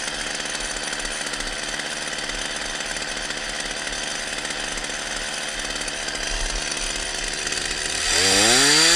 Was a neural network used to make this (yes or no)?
no